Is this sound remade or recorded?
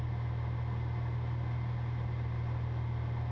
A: recorded